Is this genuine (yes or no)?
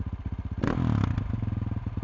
yes